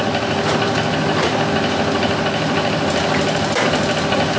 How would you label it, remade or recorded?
recorded